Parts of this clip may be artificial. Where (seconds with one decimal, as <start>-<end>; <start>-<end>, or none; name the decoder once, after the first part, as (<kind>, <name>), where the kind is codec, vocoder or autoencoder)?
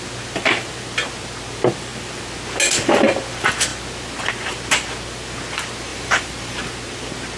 5.9-6.6 (vocoder, BigVGAN v2)